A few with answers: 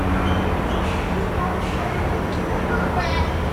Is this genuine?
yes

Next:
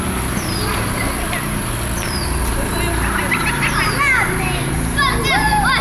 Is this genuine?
yes